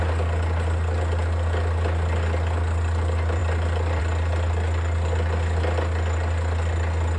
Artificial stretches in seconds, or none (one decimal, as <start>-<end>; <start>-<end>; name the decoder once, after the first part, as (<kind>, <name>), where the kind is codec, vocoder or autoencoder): none